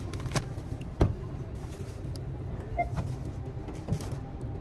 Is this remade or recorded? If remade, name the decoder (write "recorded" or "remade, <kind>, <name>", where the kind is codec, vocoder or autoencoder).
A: recorded